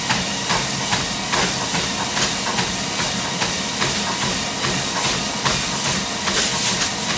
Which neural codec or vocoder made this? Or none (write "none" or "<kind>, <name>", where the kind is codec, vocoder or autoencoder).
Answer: none